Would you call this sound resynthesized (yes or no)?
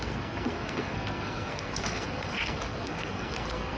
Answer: yes